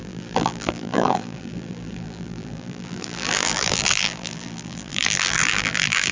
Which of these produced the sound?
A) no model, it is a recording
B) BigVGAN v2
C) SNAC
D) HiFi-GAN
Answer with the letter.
B